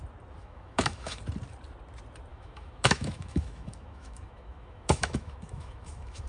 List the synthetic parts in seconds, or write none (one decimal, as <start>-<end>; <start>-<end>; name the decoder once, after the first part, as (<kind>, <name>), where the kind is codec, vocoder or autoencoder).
0.4-1.2 (autoencoder, DAC-VAE); 2.3-6.3